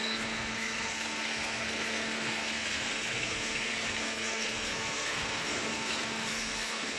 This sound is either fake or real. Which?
fake